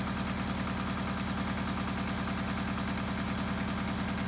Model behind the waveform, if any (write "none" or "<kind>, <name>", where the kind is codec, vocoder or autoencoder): none